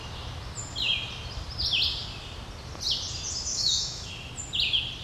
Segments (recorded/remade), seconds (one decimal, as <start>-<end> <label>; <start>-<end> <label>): 0.0-3.5 recorded; 3.5-4.1 remade; 4.1-5.0 recorded